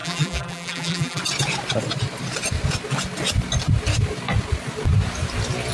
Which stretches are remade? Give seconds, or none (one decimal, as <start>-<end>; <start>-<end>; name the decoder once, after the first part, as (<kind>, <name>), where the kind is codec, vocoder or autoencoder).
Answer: 0.0-1.2 (vocoder, BigVGAN v2)